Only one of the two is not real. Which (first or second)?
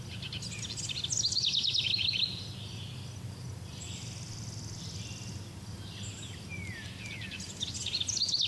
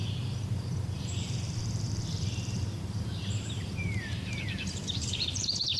second